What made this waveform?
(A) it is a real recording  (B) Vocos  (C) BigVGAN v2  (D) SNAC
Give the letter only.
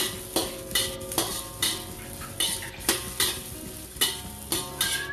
A